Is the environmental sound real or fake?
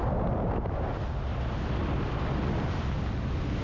real